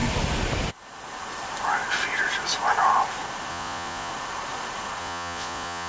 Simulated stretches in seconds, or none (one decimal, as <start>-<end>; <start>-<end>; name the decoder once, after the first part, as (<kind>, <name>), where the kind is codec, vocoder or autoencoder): 3.5-4.1 (vocoder, Vocos); 5.0-5.9